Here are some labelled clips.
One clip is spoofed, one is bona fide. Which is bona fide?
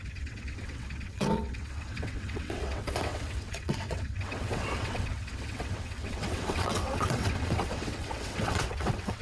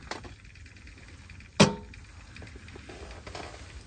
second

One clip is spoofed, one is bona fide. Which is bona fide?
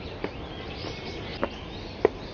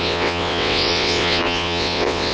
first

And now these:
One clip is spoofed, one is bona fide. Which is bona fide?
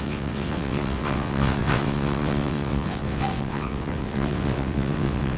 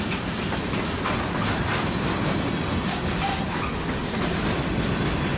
second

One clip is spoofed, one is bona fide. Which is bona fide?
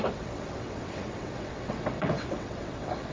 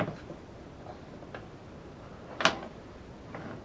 second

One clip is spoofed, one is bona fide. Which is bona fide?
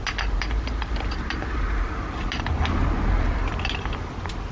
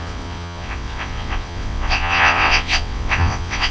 first